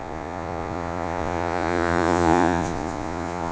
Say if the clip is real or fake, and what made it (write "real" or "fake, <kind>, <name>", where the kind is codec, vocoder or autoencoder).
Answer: fake, vocoder, Vocos